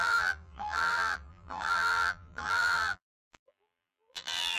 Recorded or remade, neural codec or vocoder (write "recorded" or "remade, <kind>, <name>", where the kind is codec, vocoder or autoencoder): remade, vocoder, BigVGAN v2